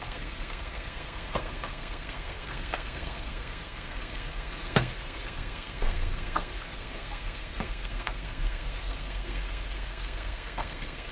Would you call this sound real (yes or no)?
no